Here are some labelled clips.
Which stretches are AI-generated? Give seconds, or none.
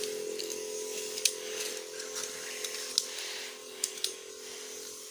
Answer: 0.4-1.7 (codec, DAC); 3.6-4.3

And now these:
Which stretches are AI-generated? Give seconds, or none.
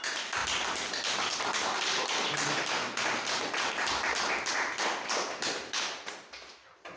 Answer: none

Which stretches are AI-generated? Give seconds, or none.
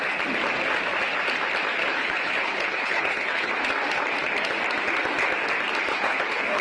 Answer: 1.8-3.5 (codec, HILCodec); 5.9-6.6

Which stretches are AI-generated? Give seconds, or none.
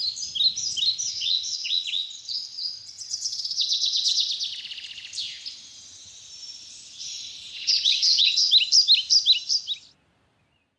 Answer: 1.1-4.3 (vocoder, WaveNeXt); 7.0-8.5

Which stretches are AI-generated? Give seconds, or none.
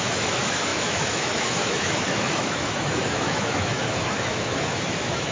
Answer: 0.0-5.3 (autoencoder, DAC-VAE)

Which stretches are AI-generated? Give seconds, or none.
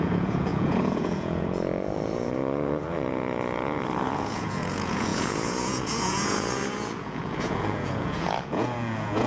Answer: 0.0-9.3 (vocoder, Vocos)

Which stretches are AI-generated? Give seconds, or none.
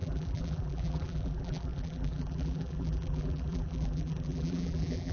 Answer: 0.0-5.1 (vocoder, BigVGAN v2)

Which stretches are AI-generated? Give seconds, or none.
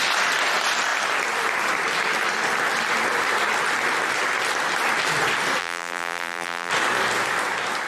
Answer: 5.6-6.7 (vocoder, BigVGAN v2)